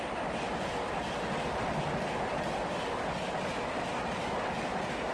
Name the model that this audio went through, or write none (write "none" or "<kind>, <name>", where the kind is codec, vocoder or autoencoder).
none